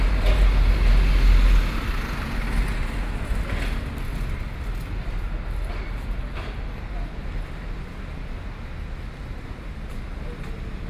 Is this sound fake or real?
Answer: real